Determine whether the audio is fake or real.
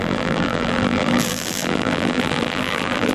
fake